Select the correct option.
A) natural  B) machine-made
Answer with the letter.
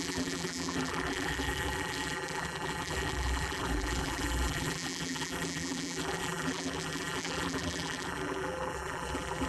B